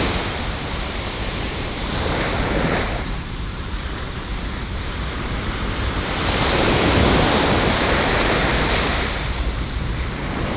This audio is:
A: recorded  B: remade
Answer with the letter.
B